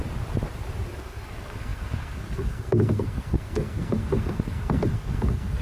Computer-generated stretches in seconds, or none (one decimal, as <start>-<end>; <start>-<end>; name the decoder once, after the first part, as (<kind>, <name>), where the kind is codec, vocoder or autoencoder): 1.0-5.6 (codec, SNAC)